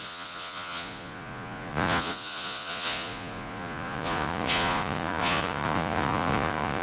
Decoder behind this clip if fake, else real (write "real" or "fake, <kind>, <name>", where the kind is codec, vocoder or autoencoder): fake, vocoder, Vocos